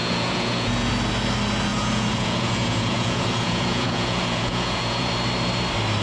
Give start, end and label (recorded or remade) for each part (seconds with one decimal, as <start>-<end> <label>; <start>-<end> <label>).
0.0-0.9 remade; 0.9-1.7 recorded; 1.7-5.1 remade; 5.1-6.0 recorded